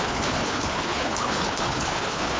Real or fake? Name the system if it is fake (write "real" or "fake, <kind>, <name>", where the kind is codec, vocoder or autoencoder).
fake, codec, HILCodec